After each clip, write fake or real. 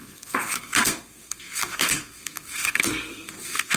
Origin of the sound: fake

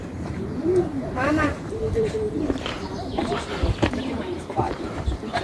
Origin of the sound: fake